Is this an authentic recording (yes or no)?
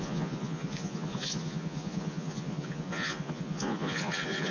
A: no